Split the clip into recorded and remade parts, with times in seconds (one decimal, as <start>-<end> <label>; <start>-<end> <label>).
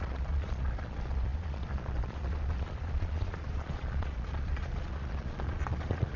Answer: 0.0-6.2 remade